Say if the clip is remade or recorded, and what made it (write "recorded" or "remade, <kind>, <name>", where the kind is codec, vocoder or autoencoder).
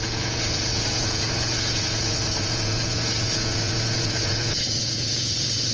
remade, vocoder, Vocos